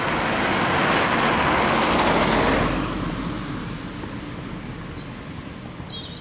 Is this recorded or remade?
recorded